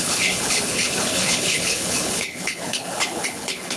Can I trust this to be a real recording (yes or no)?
no